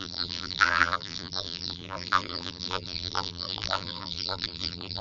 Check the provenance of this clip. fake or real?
fake